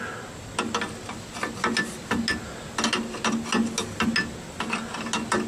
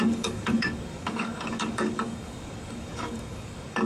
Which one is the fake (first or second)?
second